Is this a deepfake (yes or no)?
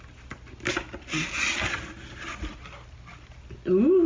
no